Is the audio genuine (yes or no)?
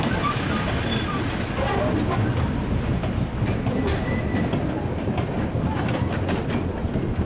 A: yes